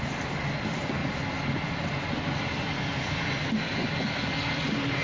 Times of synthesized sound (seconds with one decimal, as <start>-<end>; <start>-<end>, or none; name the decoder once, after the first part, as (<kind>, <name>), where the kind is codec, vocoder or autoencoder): none